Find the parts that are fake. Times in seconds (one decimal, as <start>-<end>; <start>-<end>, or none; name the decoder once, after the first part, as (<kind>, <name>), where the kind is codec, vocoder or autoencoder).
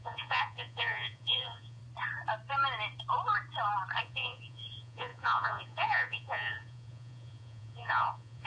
0.0-1.8 (vocoder, Vocos); 4.0-8.5